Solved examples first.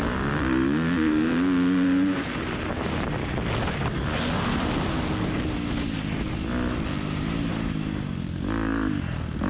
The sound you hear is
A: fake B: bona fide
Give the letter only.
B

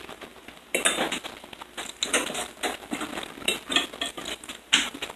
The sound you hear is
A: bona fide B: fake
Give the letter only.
A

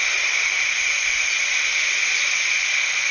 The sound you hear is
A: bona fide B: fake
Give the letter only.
A